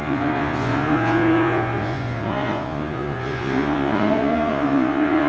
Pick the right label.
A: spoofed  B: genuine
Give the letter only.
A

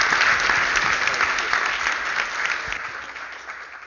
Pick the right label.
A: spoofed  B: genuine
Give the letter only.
B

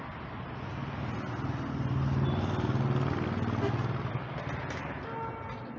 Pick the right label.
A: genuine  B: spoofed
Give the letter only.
A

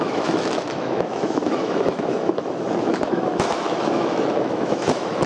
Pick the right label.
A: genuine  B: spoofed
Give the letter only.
B